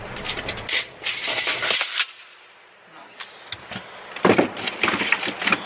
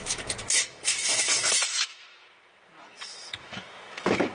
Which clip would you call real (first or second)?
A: first